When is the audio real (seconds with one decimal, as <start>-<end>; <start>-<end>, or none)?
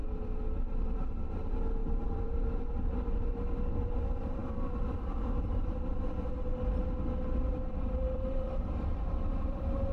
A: 0.0-0.8; 4.4-7.5